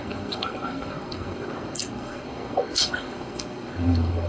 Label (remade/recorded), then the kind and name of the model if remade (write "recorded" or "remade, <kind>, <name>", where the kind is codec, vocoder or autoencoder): remade, codec, SNAC